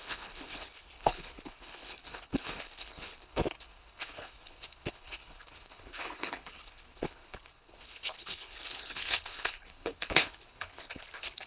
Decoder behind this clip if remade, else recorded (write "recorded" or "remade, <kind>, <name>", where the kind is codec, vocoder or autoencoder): remade, codec, HILCodec